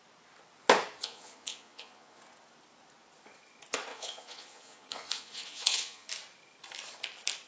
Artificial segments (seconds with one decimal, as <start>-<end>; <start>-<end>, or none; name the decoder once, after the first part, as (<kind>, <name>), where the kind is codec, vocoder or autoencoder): 1.0-2.2 (vocoder, Vocos); 3.9-6.1